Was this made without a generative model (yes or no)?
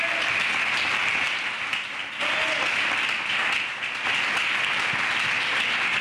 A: yes